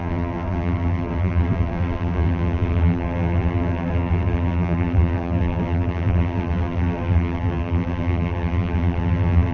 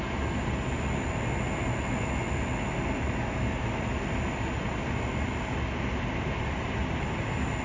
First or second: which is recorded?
second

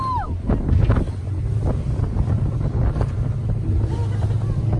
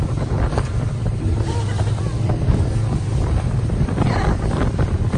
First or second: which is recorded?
first